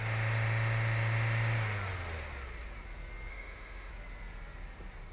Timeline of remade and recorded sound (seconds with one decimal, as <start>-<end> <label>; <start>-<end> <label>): 0.0-3.3 recorded; 3.3-3.9 remade; 3.9-5.1 recorded

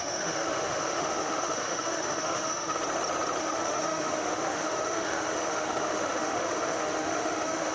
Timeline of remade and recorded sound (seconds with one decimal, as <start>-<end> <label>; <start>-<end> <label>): 0.0-2.8 remade; 2.8-3.4 recorded; 3.4-7.7 remade